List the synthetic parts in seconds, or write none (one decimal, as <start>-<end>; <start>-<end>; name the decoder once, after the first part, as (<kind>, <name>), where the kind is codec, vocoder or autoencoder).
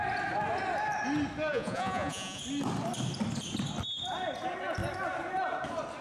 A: 1.5-2.4 (vocoder, Vocos)